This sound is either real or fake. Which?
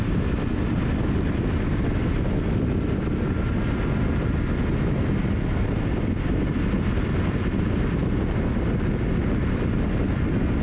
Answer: real